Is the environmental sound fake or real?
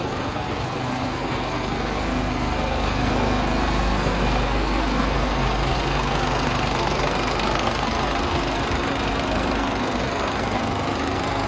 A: fake